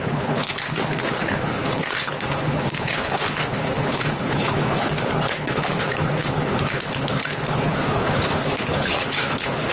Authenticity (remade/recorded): remade